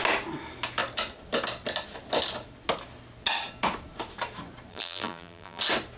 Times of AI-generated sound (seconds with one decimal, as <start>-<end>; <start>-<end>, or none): 4.7-5.6